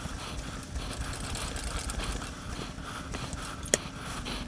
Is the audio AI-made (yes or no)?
no